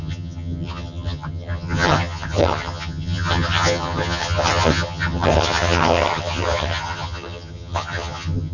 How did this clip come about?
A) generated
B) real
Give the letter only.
A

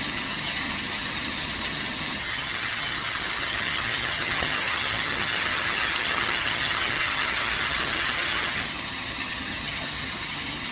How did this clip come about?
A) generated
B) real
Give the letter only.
A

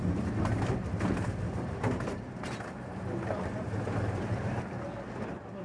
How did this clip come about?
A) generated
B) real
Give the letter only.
B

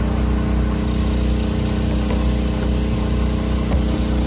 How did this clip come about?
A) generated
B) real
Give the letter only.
B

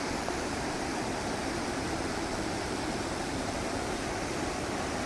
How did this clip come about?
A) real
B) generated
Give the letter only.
B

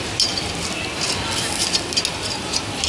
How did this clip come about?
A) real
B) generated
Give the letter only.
A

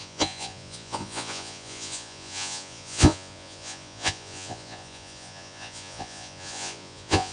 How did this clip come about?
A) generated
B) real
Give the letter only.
A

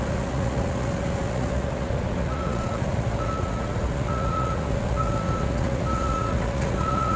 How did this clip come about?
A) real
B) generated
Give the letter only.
B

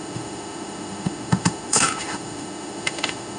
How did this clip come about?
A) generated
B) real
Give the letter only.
A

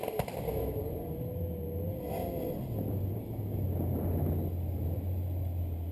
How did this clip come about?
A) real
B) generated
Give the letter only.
A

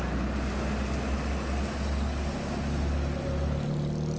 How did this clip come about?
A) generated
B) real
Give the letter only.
B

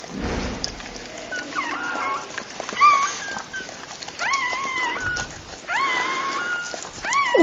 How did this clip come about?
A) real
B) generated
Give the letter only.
A